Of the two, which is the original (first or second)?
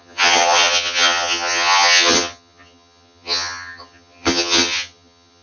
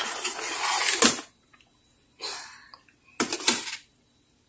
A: second